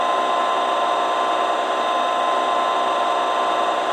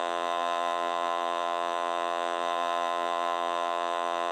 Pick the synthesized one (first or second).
second